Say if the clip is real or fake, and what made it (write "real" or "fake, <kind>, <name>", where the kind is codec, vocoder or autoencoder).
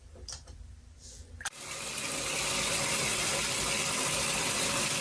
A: real